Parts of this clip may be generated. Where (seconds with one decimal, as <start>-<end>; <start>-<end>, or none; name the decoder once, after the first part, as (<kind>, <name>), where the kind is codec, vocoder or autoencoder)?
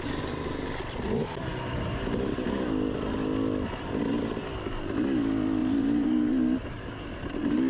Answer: 5.6-7.7 (vocoder, BigVGAN v2)